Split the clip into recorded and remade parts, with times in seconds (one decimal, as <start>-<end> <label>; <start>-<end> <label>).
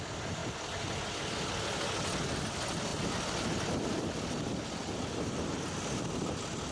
0.0-6.7 recorded